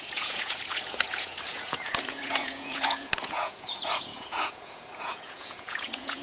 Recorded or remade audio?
remade